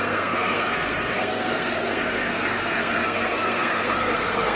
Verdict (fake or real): fake